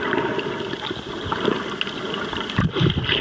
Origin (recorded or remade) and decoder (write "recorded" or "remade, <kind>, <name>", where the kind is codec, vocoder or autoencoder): recorded